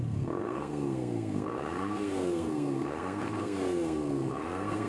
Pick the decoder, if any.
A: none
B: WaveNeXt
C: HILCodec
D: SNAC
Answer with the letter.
D